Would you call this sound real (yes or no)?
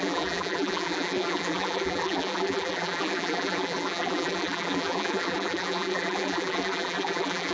no